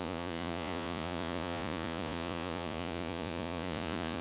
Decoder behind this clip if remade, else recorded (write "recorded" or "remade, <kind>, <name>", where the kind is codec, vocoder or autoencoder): remade, vocoder, Vocos